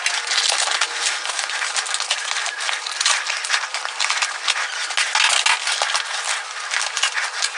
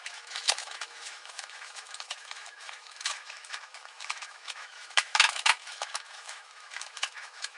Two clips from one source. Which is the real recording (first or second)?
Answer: first